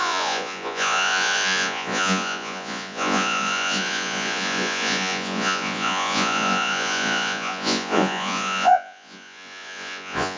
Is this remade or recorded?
remade